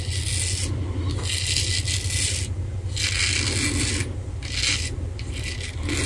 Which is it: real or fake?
real